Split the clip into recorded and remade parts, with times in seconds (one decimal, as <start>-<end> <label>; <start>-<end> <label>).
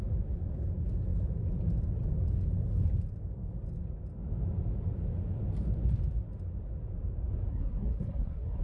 0.0-7.5 recorded; 7.5-8.6 remade